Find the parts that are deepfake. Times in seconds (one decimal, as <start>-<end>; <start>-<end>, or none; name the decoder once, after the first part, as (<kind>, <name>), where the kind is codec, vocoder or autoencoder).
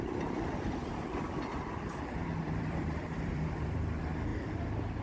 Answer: 0.8-3.8 (vocoder, BigVGAN v2)